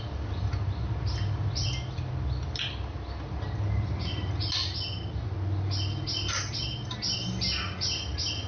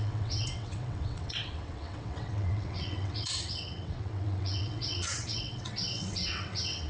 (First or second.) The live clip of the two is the first